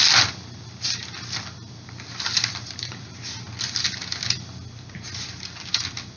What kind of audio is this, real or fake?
real